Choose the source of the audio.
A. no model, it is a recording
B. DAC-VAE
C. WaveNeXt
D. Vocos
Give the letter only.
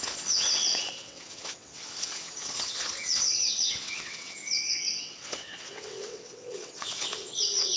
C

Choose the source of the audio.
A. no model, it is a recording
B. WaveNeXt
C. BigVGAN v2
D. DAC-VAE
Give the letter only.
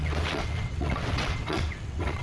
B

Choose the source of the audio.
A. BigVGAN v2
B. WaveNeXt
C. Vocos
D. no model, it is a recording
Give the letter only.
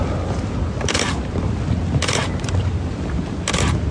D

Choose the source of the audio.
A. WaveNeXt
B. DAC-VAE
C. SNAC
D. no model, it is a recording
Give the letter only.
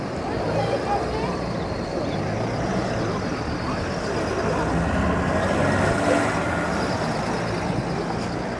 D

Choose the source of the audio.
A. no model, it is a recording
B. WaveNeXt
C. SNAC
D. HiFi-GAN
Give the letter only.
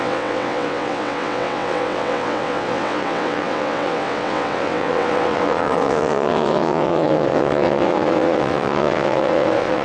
B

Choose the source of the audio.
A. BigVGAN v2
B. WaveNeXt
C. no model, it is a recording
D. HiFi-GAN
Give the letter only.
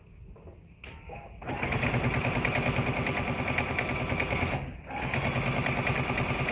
C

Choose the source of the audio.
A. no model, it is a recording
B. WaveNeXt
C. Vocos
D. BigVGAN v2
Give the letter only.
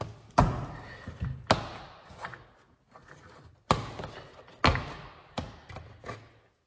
A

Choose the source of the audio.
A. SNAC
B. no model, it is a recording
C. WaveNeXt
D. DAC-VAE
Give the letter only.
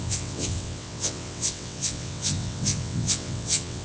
C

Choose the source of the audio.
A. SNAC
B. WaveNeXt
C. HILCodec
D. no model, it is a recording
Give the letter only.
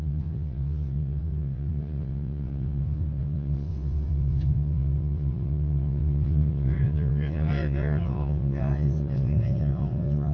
B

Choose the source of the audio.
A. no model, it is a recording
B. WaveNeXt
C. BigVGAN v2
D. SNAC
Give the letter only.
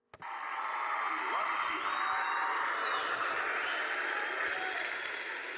A